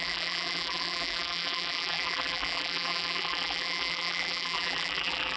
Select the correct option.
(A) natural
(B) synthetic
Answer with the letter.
B